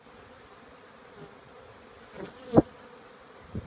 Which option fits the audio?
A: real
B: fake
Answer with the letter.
A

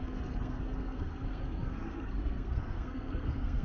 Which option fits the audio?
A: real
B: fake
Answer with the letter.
B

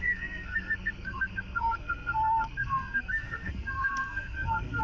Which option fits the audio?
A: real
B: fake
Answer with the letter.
B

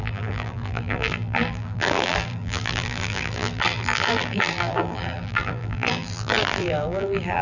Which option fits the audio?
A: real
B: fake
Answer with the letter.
B